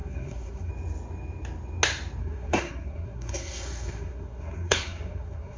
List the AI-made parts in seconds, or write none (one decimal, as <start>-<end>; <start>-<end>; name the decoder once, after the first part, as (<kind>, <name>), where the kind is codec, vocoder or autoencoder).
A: 0.0-0.7 (codec, SNAC); 2.2-5.6